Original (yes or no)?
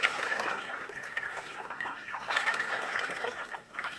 no